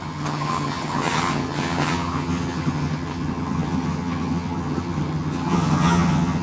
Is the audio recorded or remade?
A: remade